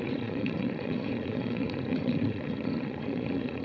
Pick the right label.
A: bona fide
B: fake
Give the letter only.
B